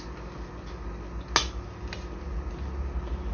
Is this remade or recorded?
recorded